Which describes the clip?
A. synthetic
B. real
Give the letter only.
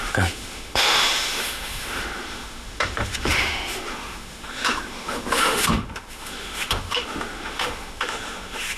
A